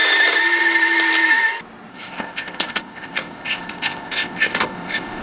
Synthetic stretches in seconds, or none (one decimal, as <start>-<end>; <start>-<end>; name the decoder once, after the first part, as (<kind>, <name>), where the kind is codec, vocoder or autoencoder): 1.9-5.2 (codec, ZipCodec)